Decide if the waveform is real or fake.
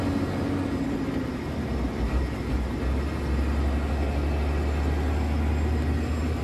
real